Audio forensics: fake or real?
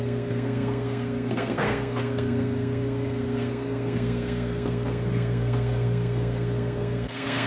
fake